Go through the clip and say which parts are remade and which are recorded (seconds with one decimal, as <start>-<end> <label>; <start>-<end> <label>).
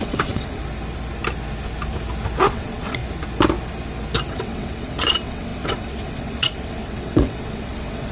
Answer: 0.0-0.6 remade; 0.6-2.5 recorded; 2.5-3.0 remade; 3.0-4.3 recorded; 4.3-8.1 remade